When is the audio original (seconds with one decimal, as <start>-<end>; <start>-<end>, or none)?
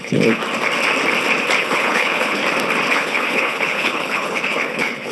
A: 0.4-1.6; 2.4-2.9